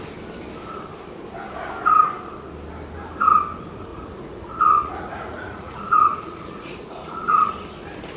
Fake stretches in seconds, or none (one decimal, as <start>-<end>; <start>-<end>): 3.9-7.5